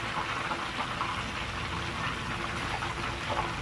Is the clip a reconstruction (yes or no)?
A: no